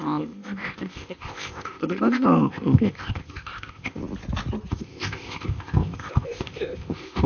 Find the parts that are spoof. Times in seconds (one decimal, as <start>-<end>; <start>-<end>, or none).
0.0-4.0; 4.7-7.3